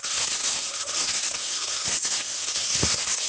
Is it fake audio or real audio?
fake